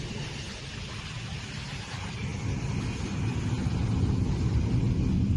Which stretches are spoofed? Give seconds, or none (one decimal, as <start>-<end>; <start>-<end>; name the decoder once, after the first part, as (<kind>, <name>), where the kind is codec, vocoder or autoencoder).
none